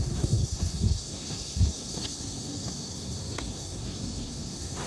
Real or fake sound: fake